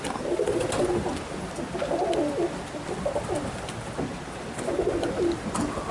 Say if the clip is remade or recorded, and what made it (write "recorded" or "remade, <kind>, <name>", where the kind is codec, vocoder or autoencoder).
recorded